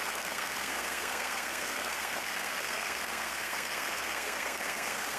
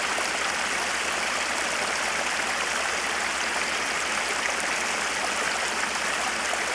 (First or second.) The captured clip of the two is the second